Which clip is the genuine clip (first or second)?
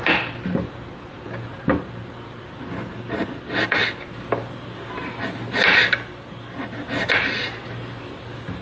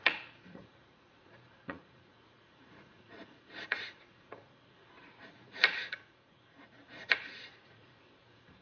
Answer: first